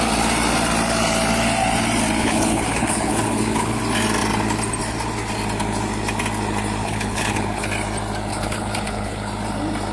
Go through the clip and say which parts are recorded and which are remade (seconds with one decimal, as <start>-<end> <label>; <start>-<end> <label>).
0.0-2.2 recorded; 2.2-3.8 remade; 3.8-6.8 recorded; 6.8-7.7 remade; 7.7-8.3 recorded; 8.3-9.3 remade; 9.3-9.9 recorded